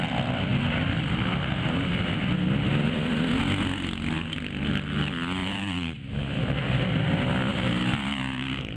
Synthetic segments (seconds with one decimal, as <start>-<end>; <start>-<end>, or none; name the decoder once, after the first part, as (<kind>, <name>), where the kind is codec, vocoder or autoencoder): 5.4-6.1 (vocoder, BigVGAN v2); 7.5-8.8